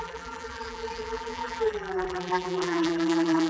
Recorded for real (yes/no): no